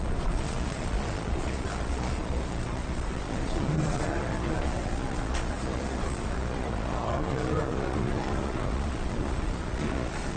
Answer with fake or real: fake